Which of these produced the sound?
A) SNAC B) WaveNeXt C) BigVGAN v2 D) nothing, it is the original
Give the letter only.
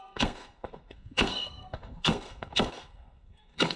A